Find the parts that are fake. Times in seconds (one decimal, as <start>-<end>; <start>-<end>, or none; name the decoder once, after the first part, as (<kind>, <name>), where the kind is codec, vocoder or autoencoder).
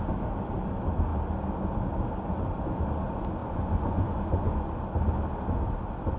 3.4-4.7 (vocoder, Vocos)